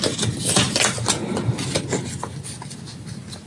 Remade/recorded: recorded